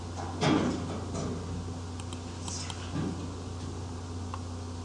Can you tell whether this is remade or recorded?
recorded